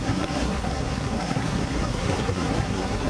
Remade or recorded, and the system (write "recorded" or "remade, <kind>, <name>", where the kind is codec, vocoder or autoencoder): remade, codec, SNAC